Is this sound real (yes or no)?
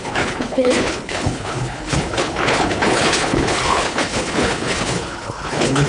no